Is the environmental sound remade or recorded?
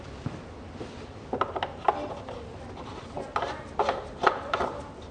recorded